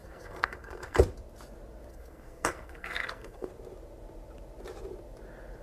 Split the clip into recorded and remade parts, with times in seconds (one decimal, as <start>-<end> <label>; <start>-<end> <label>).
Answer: 0.0-1.0 remade; 1.0-1.9 recorded; 1.9-3.5 remade; 3.5-5.6 recorded

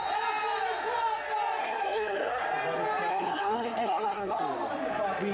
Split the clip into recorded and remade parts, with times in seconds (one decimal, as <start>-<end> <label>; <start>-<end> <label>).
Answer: 0.0-1.6 recorded; 1.6-2.4 remade; 2.4-3.1 recorded; 3.1-4.4 remade; 4.4-5.3 recorded